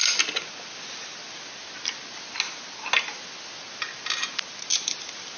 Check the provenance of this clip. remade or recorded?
recorded